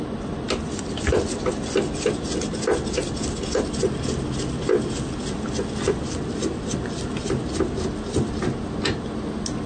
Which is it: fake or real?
real